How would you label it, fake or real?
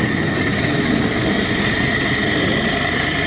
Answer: real